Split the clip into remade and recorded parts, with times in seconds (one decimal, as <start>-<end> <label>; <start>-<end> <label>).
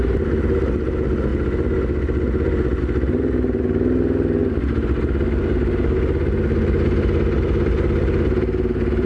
0.0-9.1 recorded